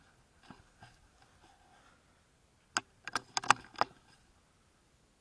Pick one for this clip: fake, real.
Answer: real